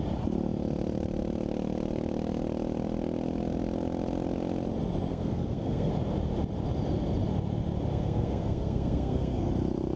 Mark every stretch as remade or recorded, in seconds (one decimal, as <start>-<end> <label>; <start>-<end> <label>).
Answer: 0.0-5.1 recorded; 5.1-5.9 remade; 5.9-7.9 recorded; 7.9-9.5 remade; 9.5-10.0 recorded

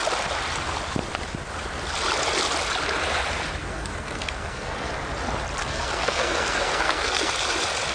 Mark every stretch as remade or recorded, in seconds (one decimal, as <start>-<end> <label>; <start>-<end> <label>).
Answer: 0.0-3.6 recorded; 3.6-4.9 remade; 4.9-5.6 recorded; 5.6-7.3 remade; 7.3-7.9 recorded

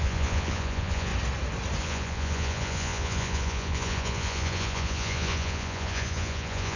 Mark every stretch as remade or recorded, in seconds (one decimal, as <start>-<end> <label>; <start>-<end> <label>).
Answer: 0.0-1.1 remade; 1.1-1.8 recorded; 1.8-6.8 remade

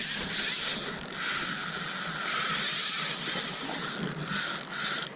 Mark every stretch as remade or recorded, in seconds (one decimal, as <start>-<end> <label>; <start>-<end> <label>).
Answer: 0.0-5.2 recorded

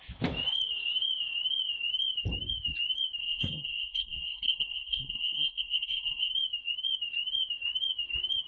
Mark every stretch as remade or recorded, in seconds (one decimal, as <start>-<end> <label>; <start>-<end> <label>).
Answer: 0.0-3.2 recorded; 3.2-6.3 remade; 6.3-8.5 recorded

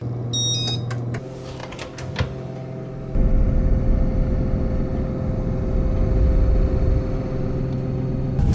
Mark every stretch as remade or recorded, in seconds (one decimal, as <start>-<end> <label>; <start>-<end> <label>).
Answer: 0.0-8.5 recorded